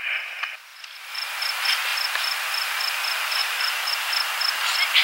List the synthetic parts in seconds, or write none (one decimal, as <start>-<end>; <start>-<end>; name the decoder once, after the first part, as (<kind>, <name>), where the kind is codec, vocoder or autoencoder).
0.7-1.5 (vocoder, BigVGAN v2); 3.4-3.9

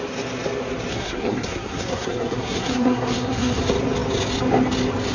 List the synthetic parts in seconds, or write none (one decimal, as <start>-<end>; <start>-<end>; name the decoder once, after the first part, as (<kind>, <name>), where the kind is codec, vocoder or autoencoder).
0.9-3.6 (codec, SNAC)